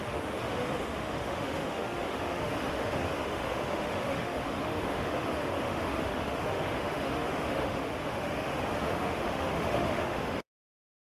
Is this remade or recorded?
remade